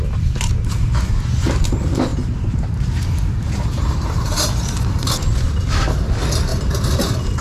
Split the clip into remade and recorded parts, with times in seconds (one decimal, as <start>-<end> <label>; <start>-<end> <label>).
0.0-2.1 recorded; 2.1-4.4 remade; 4.4-6.5 recorded; 6.5-7.0 remade; 7.0-7.4 recorded